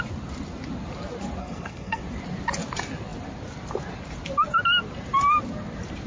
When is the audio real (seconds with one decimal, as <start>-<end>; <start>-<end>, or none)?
0.0-1.4; 2.0-6.1

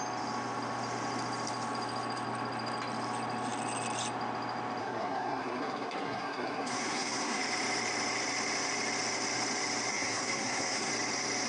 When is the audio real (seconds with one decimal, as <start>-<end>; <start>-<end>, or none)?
0.0-4.8; 7.4-9.9; 10.9-11.5

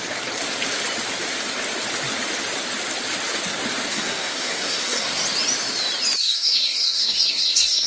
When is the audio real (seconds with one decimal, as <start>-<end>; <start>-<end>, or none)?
0.0-3.9; 5.2-6.2

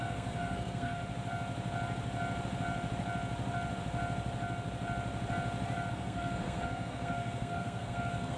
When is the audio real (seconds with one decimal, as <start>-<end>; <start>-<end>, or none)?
1.0-5.9

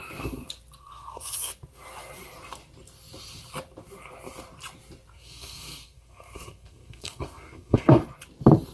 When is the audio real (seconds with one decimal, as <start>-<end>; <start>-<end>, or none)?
0.0-0.8; 1.5-5.1; 8.0-8.7

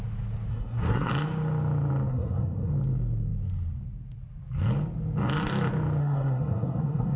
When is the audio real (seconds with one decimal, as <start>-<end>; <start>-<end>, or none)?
0.0-0.5; 1.1-2.1; 2.7-6.0

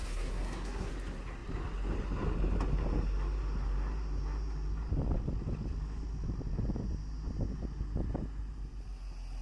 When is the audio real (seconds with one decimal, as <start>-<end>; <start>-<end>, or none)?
0.9-9.4